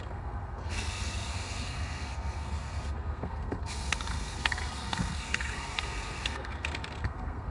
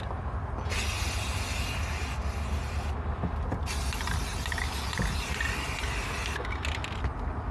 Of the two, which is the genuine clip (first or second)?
second